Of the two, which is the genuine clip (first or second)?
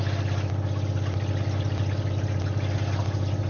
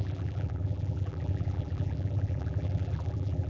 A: first